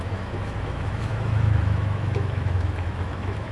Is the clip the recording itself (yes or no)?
no